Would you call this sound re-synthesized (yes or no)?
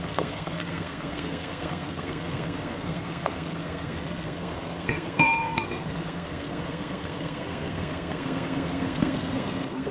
yes